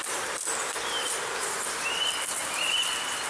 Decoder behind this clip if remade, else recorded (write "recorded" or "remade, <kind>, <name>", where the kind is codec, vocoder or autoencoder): recorded